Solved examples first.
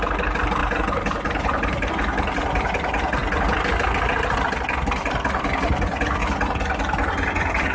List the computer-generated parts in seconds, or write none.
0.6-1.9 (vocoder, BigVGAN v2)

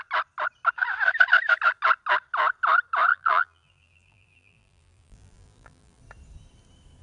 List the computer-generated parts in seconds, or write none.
3.1-6.0 (vocoder, BigVGAN v2)

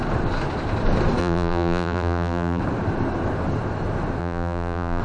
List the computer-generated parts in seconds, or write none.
1.2-2.6 (vocoder, BigVGAN v2); 4.2-5.0

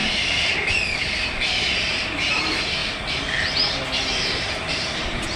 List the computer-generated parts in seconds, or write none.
0.0-2.8 (vocoder, BigVGAN v2); 4.3-5.4

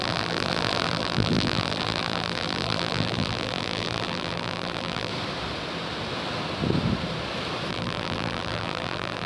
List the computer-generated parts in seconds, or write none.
0.0-5.1 (vocoder, BigVGAN v2); 7.7-9.3

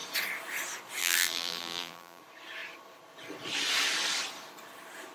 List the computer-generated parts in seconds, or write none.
1.0-2.2 (vocoder, BigVGAN v2)

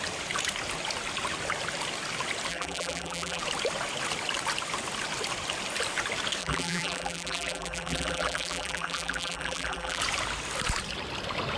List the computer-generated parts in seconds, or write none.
2.5-3.4 (vocoder, BigVGAN v2); 6.4-10.0